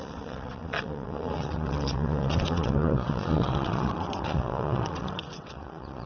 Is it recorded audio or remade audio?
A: remade